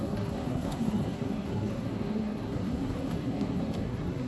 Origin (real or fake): fake